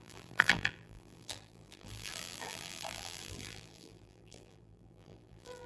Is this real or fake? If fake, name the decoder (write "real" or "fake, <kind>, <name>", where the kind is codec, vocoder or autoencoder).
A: fake, vocoder, BigVGAN v2